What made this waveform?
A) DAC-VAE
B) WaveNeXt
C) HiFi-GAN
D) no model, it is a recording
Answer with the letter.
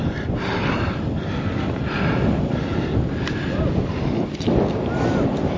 D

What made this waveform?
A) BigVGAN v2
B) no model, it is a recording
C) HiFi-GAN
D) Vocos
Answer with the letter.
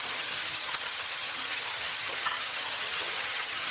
C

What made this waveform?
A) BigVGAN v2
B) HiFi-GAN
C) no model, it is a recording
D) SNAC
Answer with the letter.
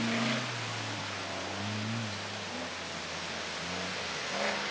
C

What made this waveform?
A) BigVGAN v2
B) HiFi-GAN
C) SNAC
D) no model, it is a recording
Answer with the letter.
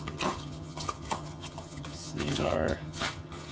B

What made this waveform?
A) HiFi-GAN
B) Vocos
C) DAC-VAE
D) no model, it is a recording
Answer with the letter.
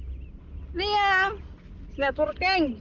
D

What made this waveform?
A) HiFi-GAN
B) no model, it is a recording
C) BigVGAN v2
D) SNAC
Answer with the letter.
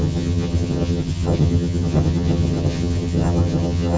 A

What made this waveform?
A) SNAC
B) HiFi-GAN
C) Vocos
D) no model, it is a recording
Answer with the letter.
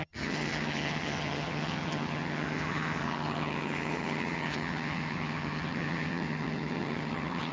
B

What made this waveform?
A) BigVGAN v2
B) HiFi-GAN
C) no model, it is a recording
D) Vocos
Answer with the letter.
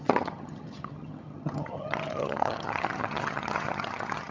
B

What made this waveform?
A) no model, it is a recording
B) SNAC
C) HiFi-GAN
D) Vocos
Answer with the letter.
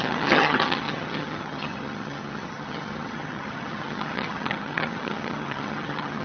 C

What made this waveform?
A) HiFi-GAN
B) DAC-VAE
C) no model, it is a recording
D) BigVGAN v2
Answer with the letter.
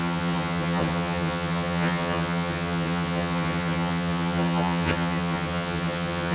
A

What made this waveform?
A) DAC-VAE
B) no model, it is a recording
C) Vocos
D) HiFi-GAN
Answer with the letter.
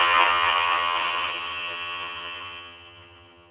D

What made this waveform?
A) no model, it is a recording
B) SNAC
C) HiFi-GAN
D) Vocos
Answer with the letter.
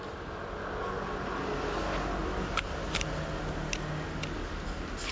A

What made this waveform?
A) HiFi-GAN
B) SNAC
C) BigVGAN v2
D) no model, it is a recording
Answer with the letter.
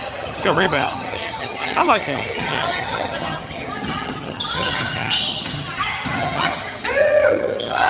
A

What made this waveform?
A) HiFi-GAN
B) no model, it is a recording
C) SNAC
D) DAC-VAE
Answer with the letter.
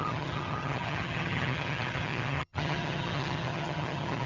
A